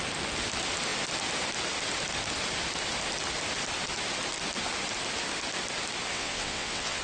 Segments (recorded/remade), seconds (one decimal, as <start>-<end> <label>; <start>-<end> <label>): 0.0-6.1 recorded; 6.1-7.0 remade